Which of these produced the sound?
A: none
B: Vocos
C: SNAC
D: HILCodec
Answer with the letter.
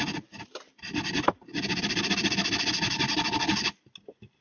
A